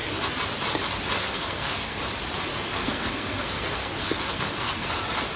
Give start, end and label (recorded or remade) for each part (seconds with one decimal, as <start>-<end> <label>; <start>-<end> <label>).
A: 0.0-1.2 recorded; 1.2-2.0 remade; 2.0-2.5 recorded; 2.5-5.0 remade; 5.0-5.4 recorded